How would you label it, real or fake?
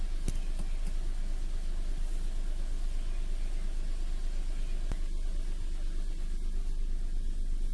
real